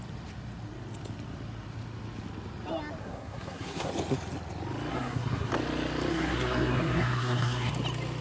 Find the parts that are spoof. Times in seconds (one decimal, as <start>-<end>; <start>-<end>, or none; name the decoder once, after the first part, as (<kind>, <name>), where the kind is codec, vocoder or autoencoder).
3.0-3.9 (codec, SNAC); 4.9-5.5; 6.1-7.7